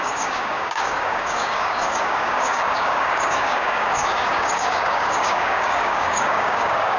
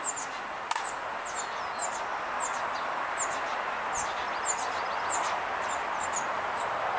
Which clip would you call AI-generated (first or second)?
first